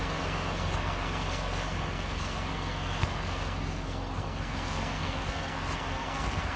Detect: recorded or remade remade